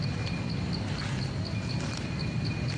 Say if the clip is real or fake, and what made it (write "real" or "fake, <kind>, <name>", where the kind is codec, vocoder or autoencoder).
real